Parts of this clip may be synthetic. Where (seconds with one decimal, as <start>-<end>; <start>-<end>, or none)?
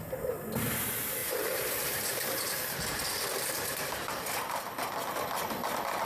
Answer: 1.2-4.9